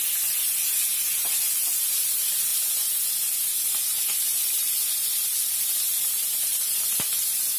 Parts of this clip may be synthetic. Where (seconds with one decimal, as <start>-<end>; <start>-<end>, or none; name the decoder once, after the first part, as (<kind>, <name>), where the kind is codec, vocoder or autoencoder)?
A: none